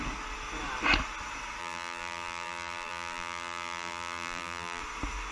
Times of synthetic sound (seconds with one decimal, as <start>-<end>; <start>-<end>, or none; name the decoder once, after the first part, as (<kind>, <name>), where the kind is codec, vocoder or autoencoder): 1.6-4.8 (vocoder, BigVGAN v2)